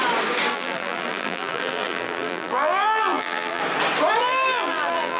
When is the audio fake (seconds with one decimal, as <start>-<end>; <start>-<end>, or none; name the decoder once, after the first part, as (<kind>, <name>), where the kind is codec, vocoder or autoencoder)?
0.5-3.6 (vocoder, BigVGAN v2); 4.2-5.2